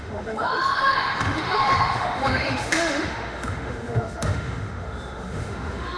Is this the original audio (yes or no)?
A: no